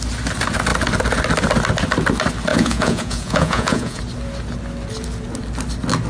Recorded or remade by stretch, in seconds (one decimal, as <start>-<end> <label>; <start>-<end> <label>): 0.0-2.5 recorded; 2.5-4.0 remade; 4.0-6.1 recorded